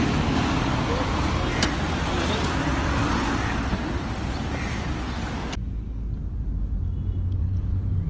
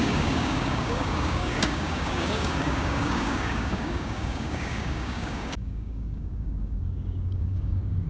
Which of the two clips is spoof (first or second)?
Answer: second